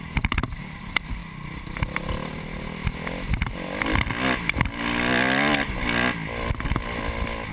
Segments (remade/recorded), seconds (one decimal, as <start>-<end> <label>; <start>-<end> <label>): 0.0-7.5 recorded